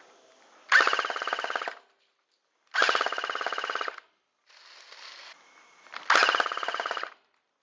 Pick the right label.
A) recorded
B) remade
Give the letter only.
A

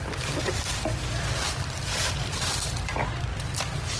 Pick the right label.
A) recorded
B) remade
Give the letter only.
B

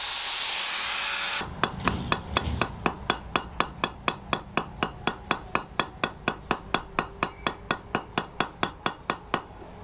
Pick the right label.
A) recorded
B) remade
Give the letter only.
A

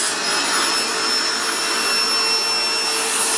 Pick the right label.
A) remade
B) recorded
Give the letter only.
B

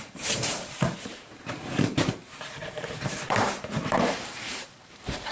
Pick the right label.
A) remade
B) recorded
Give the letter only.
A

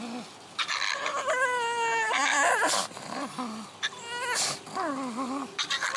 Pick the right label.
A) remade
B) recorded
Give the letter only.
B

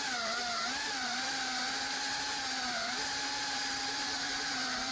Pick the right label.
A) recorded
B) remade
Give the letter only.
B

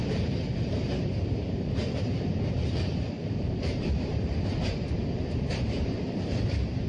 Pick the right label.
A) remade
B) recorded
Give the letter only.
A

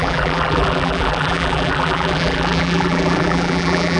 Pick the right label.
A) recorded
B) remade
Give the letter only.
B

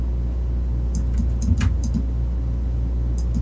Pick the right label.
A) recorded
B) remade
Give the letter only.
A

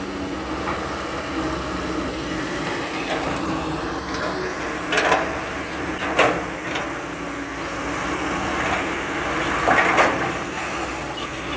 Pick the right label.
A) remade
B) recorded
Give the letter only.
B